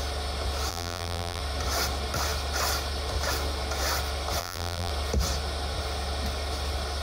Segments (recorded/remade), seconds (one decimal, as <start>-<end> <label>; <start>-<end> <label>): 0.0-0.7 recorded; 0.7-1.4 remade; 1.4-4.4 recorded; 4.4-4.9 remade; 4.9-7.0 recorded